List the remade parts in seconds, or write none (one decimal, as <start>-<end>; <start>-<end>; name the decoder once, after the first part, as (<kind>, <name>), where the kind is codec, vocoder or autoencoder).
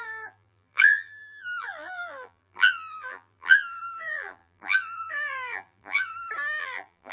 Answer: 0.0-6.1 (vocoder, BigVGAN v2); 6.6-7.1